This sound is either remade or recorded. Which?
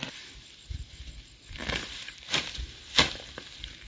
recorded